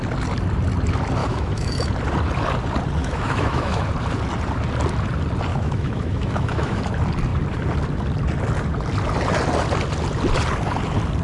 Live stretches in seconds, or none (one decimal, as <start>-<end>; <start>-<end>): 0.0-1.2; 1.9-3.0; 3.8-5.5; 6.8-11.2